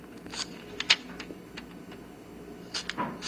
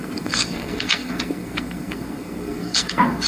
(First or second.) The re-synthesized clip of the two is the second